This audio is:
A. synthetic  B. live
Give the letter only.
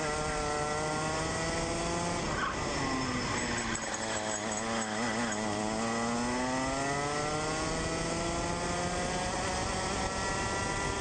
B